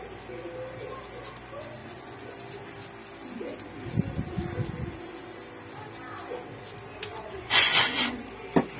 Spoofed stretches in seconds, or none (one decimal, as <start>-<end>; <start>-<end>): 1.8-2.3; 7.1-8.2